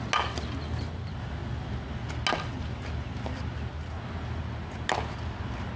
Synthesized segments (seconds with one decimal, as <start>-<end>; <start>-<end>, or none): none

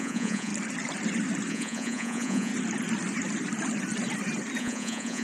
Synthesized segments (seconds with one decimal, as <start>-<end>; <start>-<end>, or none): 0.0-0.5; 1.5-2.5; 4.6-5.2

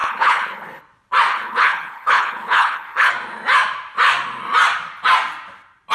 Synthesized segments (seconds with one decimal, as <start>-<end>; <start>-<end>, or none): 0.0-0.8; 1.3-3.1

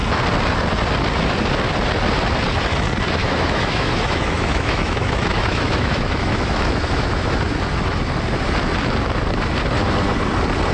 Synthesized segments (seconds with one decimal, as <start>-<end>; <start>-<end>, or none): 3.2-7.4

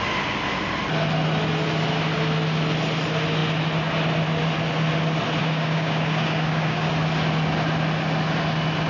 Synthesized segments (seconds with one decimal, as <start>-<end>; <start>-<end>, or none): 5.4-6.9